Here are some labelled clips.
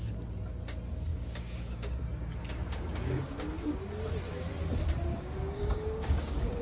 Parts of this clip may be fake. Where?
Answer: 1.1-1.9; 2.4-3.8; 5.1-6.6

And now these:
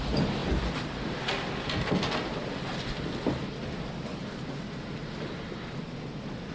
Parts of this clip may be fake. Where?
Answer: none

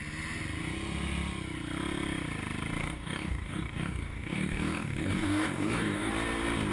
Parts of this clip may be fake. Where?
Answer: 2.8-6.1

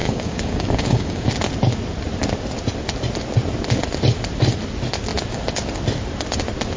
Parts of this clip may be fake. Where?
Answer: 0.0-1.3